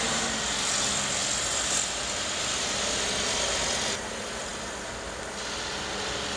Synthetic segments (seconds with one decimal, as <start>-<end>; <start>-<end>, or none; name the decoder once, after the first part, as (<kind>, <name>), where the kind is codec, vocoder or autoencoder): none